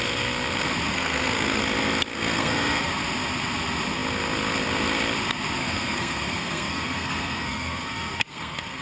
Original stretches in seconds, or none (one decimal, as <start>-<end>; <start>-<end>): 0.0-0.9; 1.6-2.1; 2.9-5.6